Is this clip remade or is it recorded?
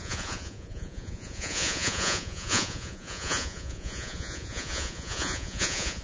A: remade